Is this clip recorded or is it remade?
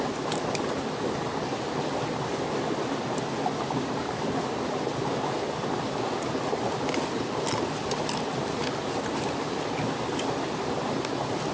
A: recorded